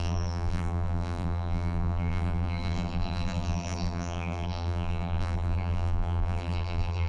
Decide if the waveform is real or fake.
fake